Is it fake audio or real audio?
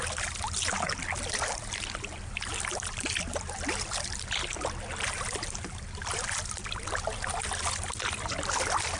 real